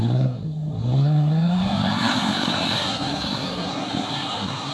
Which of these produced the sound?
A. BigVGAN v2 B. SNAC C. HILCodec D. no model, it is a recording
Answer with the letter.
B